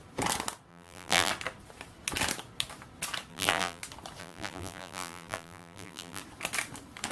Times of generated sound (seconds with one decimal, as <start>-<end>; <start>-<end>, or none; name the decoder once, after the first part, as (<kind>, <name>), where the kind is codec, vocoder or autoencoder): 0.7-1.3 (vocoder, BigVGAN v2); 3.3-3.8; 4.2-6.2